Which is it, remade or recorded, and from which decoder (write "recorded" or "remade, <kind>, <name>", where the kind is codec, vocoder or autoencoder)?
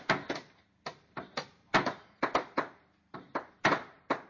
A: remade, vocoder, BigVGAN v2